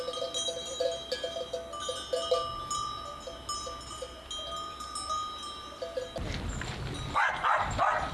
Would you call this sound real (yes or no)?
yes